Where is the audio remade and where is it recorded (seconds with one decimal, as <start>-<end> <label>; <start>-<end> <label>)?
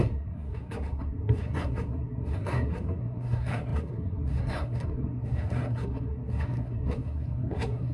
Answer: 0.0-7.9 remade